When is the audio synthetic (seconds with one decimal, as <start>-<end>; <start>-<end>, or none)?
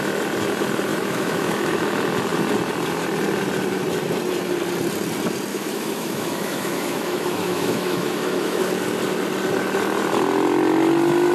0.9-1.9; 5.5-8.6